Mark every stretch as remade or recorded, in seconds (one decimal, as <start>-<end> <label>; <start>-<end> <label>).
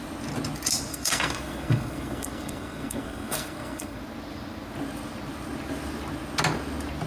0.0-0.9 recorded; 0.9-4.0 remade; 4.0-7.1 recorded